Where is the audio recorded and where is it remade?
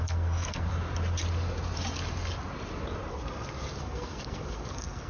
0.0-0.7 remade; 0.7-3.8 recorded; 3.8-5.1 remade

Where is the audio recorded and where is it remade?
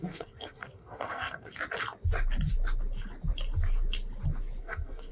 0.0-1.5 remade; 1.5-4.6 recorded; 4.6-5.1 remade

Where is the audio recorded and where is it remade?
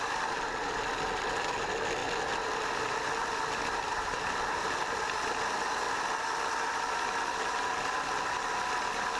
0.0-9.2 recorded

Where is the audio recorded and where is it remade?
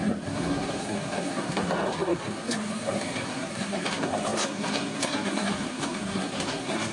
0.0-6.9 remade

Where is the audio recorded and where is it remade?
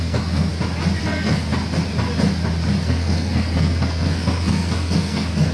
0.0-0.5 remade; 0.5-1.0 recorded; 1.0-1.5 remade; 1.5-2.8 recorded; 2.8-5.5 remade